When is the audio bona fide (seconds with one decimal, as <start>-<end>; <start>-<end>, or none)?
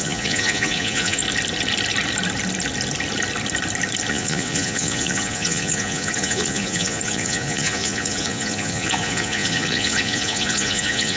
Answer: 1.2-4.1